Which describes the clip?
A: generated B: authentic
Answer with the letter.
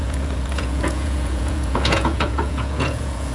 A